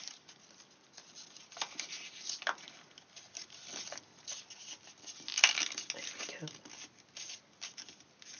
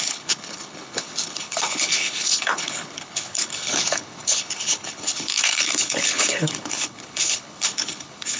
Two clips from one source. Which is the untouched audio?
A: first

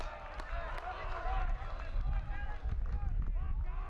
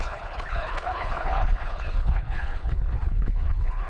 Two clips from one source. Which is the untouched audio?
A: first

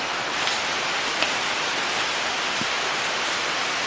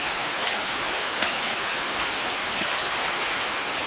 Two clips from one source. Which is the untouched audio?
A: first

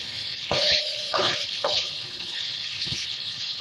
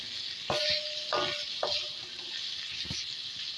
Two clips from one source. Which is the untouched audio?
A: second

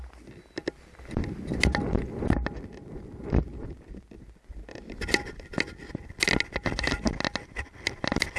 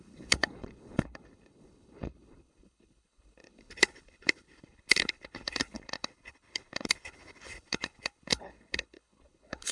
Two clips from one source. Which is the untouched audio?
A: first